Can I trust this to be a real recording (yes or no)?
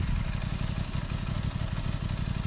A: yes